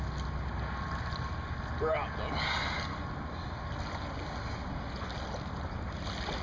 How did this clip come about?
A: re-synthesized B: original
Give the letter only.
B